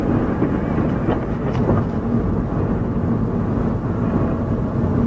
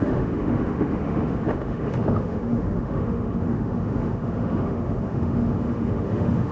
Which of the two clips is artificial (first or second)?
second